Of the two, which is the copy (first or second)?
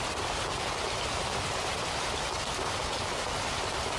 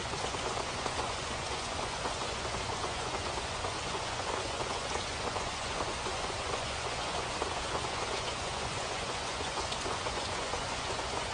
second